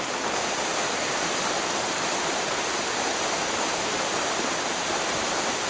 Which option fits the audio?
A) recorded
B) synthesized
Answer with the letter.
A